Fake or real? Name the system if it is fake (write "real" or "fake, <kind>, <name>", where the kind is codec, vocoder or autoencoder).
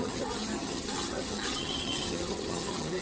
fake, vocoder, HiFi-GAN